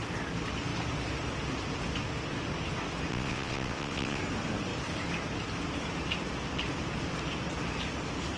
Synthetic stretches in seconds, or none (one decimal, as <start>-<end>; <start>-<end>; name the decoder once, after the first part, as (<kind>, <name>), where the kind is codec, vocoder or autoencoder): 3.1-4.2 (vocoder, WaveNeXt)